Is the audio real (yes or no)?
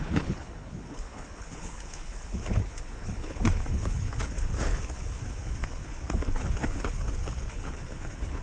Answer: no